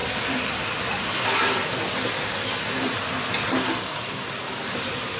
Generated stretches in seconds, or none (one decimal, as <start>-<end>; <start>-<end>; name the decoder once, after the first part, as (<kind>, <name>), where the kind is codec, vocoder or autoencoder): none